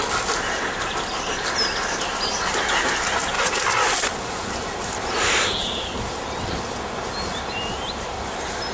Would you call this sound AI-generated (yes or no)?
no